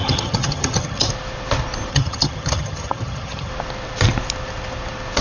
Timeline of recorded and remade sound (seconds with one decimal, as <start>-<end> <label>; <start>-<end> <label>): 0.0-1.1 remade; 1.1-1.9 recorded; 1.9-3.5 remade; 3.5-5.2 recorded